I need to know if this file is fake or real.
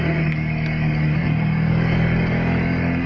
fake